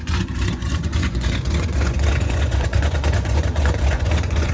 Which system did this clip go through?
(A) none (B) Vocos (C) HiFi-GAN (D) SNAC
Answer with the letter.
B